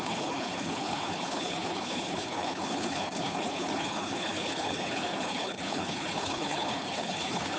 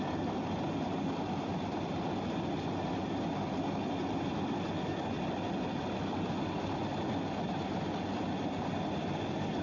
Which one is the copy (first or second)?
first